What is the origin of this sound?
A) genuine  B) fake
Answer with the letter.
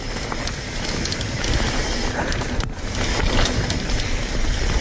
A